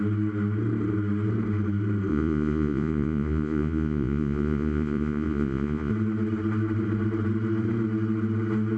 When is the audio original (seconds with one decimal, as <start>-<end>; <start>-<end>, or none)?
0.0-2.1; 5.9-8.8